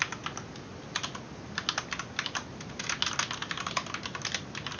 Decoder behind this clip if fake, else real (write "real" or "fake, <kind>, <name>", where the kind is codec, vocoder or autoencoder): real